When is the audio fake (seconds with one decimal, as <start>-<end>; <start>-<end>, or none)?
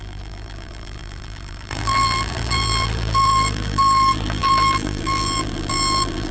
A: 0.0-6.3